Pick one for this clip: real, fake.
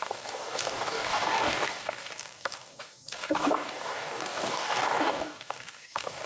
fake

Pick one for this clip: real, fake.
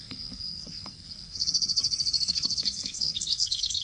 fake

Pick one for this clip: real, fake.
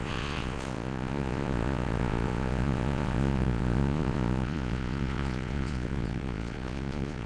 fake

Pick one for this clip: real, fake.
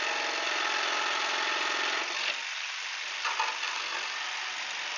real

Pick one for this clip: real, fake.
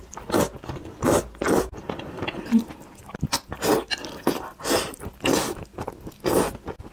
real